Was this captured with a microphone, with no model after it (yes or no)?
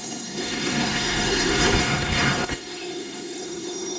no